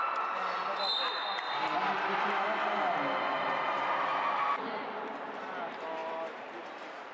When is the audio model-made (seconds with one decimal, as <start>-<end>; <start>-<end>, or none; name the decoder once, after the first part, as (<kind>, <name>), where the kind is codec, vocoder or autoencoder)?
6.0-7.1 (vocoder, BigVGAN v2)